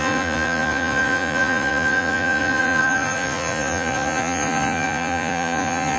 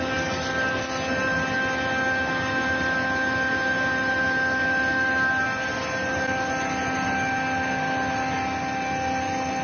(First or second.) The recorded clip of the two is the second